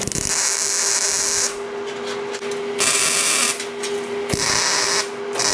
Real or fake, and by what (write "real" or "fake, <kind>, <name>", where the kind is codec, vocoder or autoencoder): real